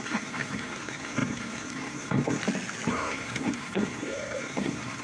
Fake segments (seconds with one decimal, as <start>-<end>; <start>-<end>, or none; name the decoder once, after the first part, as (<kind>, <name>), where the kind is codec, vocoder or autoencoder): 0.0-2.4 (codec, SNAC); 2.9-5.0